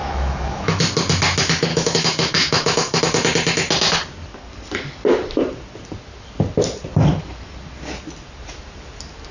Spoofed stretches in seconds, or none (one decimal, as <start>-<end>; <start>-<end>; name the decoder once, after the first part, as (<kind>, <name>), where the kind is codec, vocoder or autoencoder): 0.0-0.8 (autoencoder, DAC-VAE); 1.7-3.0